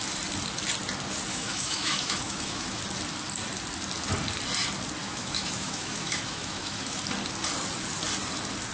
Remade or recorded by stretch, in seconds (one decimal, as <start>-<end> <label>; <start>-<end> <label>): 0.0-1.3 recorded; 1.3-2.8 remade; 2.8-5.0 recorded; 5.0-7.0 remade; 7.0-8.7 recorded